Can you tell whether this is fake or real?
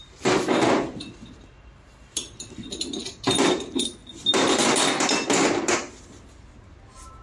real